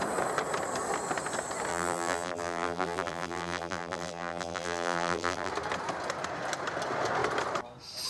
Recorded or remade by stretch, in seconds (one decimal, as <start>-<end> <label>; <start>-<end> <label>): 0.0-1.7 recorded; 1.7-5.5 remade; 5.5-8.1 recorded